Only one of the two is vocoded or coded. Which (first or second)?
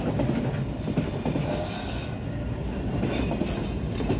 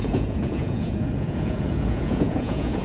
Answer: second